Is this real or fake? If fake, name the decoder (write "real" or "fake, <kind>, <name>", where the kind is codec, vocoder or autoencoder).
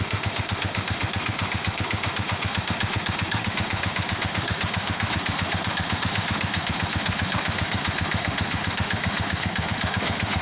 fake, autoencoder, DAC-VAE